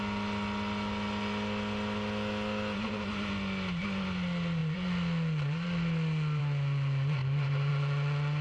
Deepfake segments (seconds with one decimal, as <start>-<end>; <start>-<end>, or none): none